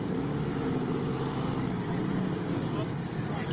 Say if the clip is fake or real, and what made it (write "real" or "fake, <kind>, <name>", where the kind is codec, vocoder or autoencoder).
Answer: real